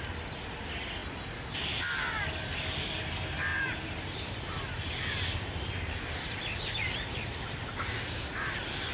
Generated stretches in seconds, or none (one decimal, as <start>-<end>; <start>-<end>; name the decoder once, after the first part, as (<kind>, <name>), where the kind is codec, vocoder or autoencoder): none